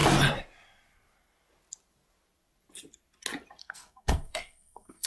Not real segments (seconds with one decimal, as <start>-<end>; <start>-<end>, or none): 3.6-5.1